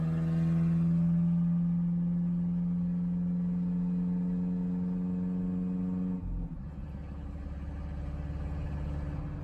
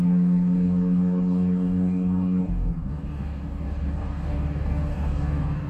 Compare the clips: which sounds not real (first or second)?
second